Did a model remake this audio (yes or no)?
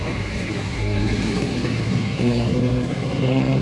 yes